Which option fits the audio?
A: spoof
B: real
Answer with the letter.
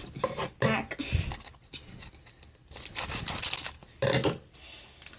B